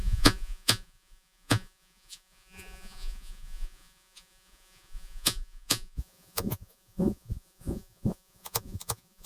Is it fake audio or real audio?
fake